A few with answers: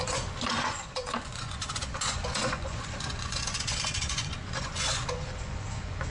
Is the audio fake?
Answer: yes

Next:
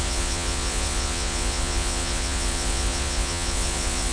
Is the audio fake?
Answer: yes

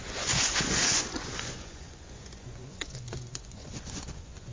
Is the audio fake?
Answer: yes